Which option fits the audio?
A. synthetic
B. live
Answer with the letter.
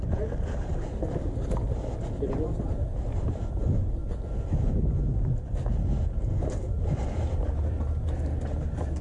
B